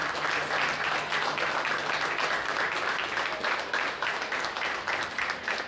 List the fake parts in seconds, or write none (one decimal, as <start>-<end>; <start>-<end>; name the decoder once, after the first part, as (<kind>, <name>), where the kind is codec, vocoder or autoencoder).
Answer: none